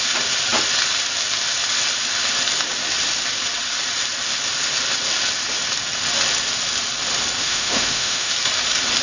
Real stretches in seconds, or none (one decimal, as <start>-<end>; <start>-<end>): 0.0-7.4; 8.3-9.0